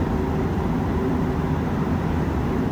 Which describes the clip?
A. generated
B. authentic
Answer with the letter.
B